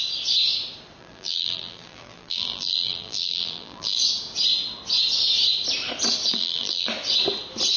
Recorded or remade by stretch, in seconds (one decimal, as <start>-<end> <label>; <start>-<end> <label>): 0.0-1.0 recorded; 1.0-4.0 remade; 4.0-6.3 recorded; 6.3-6.9 remade; 6.9-7.8 recorded